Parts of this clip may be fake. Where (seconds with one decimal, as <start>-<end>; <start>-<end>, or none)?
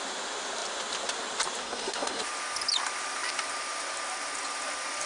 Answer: 1.6-2.2